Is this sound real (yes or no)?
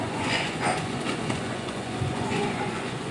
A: no